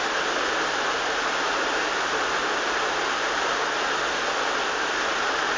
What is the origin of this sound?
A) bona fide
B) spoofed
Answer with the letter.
A